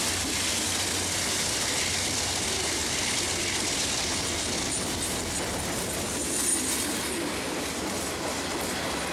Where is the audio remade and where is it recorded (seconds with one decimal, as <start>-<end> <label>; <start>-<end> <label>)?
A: 0.0-9.1 recorded